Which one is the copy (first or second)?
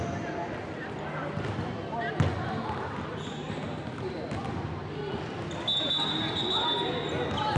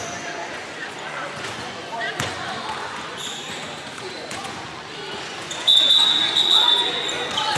second